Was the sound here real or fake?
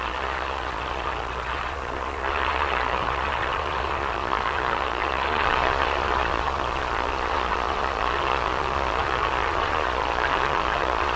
fake